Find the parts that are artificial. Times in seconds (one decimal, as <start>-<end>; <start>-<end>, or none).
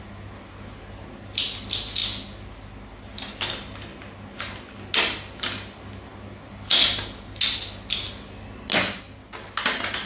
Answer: none